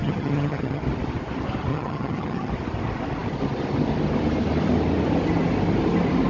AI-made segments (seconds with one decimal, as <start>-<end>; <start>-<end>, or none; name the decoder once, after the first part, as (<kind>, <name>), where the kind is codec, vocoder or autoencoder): 0.0-0.8 (vocoder, HiFi-GAN); 1.7-2.5